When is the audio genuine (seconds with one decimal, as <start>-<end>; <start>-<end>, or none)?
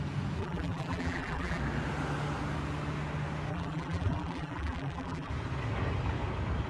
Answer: 0.0-0.4; 1.6-3.5; 5.3-6.7